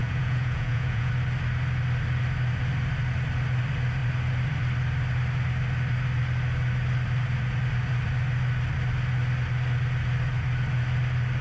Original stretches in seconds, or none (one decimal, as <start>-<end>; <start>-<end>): 1.1-11.4